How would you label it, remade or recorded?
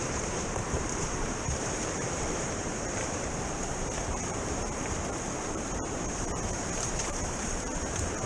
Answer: remade